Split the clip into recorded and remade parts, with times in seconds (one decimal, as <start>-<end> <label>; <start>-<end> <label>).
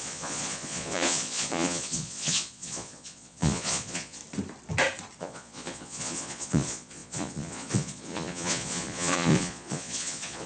0.0-4.2 remade; 4.2-5.2 recorded; 5.2-10.5 remade